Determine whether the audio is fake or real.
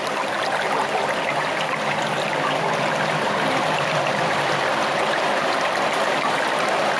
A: real